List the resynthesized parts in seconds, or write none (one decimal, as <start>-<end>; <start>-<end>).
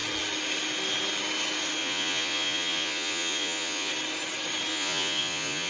1.8-3.9; 4.7-5.7